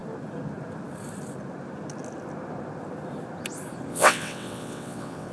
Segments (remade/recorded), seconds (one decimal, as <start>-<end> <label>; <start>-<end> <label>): 0.0-3.9 recorded; 3.9-5.3 remade

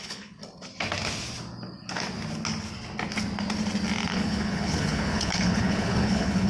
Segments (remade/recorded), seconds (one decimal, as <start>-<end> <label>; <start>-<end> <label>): 0.0-0.4 remade; 0.4-4.1 recorded; 4.1-6.5 remade

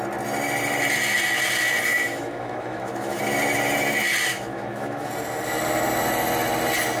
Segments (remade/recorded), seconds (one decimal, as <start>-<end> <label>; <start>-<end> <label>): 0.0-1.9 recorded; 1.9-3.2 remade; 3.2-4.3 recorded; 4.3-5.1 remade; 5.1-7.0 recorded

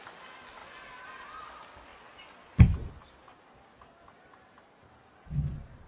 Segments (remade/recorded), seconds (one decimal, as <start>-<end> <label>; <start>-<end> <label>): 0.0-5.9 recorded

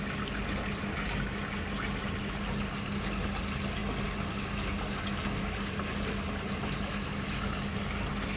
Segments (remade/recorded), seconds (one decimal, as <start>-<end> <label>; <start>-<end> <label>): 0.0-8.4 recorded